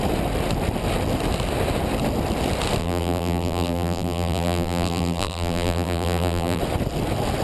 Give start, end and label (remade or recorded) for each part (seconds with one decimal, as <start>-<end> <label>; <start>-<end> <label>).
0.0-2.8 recorded; 2.8-6.6 remade; 6.6-7.4 recorded